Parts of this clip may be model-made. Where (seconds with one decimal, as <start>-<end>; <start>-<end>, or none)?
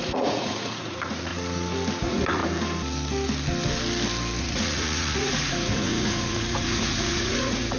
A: 0.0-1.3; 2.0-2.4; 4.4-7.8